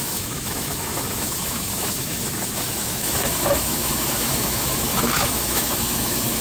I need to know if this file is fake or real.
fake